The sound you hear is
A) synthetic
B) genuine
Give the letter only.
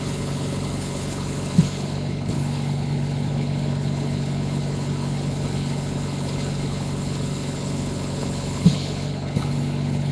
A